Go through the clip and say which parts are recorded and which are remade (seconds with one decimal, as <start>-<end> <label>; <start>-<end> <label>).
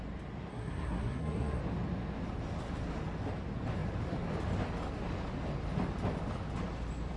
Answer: 0.0-0.5 recorded; 0.5-1.6 remade; 1.6-7.2 recorded